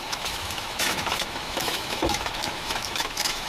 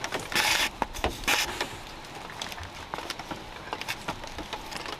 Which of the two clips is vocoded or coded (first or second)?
first